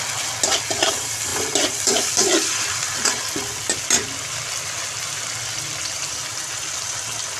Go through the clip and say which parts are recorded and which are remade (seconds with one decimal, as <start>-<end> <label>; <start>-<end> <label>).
0.0-1.3 recorded; 1.3-2.8 remade; 2.8-7.4 recorded